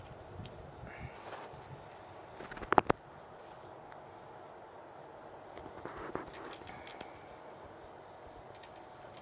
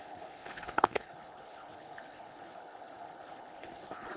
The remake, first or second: second